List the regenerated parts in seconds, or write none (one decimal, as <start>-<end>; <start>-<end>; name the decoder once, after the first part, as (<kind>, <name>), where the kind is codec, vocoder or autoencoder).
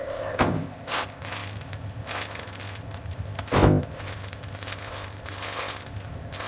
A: 0.0-6.5 (codec, ZipCodec)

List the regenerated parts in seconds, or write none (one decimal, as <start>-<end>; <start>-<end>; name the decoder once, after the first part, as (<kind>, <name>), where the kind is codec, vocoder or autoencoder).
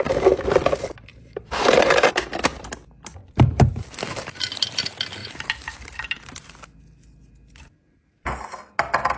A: 1.1-1.7 (vocoder, BigVGAN v2); 3.2-4.0; 5.2-6.5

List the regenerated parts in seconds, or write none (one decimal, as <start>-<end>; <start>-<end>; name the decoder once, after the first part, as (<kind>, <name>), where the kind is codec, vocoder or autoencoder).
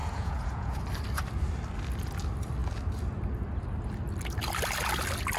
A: 0.0-0.8 (vocoder, Vocos)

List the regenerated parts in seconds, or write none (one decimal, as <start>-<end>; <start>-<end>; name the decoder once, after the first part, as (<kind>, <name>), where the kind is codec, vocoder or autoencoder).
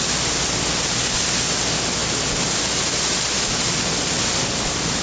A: none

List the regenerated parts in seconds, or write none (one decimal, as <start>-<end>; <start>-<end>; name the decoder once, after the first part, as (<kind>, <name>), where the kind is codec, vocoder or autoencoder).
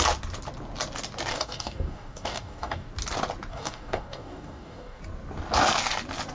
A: 1.3-2.9 (codec, DAC); 3.5-5.0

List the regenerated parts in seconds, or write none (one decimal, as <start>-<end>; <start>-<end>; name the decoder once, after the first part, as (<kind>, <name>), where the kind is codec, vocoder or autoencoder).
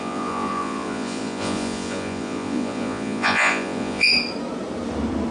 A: 0.0-4.1 (vocoder, Vocos)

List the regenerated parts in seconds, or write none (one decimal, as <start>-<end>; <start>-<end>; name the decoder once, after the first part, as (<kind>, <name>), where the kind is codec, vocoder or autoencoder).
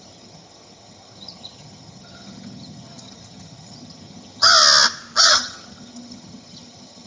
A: 0.0-4.5 (vocoder, HiFi-GAN); 5.2-7.1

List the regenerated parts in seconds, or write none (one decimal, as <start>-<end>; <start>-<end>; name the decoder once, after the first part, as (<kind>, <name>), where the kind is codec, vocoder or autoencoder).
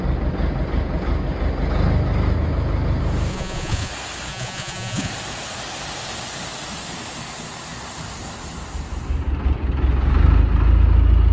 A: 3.3-3.9 (vocoder, Vocos); 4.3-5.1